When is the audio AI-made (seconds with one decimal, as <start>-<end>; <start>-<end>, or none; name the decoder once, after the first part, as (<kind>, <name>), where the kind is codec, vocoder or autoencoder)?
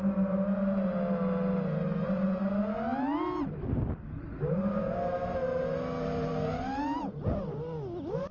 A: none